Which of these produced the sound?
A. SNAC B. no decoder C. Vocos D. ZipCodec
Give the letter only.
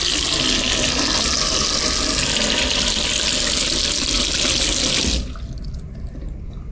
B